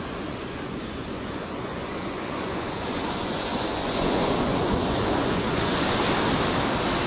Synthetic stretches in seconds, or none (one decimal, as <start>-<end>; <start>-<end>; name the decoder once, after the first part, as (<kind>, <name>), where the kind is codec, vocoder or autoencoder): 0.0-6.0 (vocoder, Vocos)